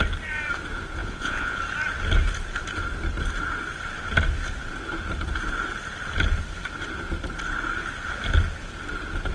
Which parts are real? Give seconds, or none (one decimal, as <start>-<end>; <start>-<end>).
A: 0.0-1.0; 1.6-9.3